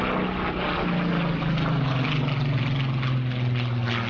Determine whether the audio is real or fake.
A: real